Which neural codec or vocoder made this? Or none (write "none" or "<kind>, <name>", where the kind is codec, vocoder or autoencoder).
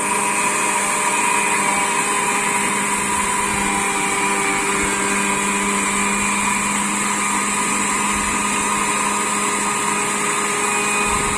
none